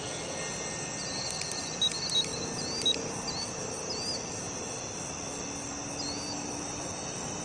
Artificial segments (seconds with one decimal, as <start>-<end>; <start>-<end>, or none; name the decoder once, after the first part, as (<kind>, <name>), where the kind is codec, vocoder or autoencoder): none